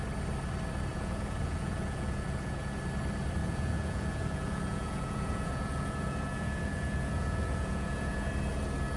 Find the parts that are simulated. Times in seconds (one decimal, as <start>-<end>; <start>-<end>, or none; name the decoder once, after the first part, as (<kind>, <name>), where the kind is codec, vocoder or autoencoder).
0.9-2.8 (vocoder, Vocos); 3.4-8.3